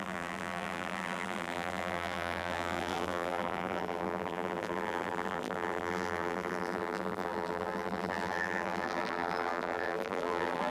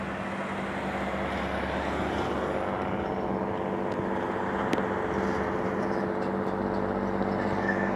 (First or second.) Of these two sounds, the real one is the second